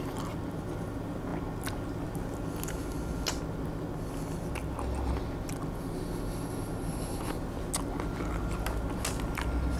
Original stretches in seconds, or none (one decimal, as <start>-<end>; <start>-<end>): 0.0-9.8

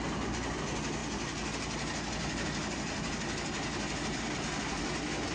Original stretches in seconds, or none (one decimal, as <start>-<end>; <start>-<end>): 0.0-5.3

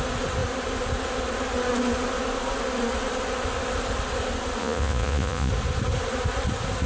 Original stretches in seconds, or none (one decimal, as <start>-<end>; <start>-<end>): 0.0-4.6; 5.5-6.9

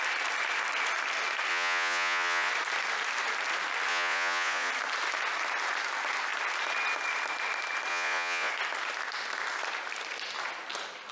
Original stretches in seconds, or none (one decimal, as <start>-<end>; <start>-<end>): 0.0-1.5; 2.5-3.9; 4.7-7.9; 8.5-11.1

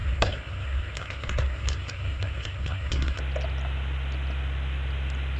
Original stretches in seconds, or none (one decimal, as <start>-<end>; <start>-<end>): 3.2-5.4